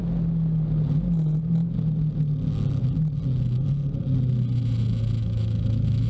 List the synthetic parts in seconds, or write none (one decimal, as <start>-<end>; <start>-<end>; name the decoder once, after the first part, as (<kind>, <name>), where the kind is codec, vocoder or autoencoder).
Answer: 5.2-6.1 (autoencoder, DAC-VAE)